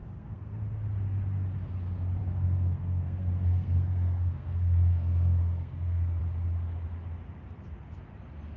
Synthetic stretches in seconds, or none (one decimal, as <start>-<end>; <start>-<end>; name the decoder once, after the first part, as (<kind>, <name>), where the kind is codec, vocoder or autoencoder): 0.0-0.6 (codec, SNAC); 2.2-6.2